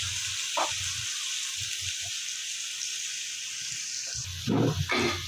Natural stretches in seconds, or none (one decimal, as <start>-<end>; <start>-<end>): 0.0-5.3